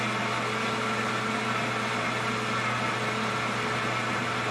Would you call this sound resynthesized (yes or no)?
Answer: no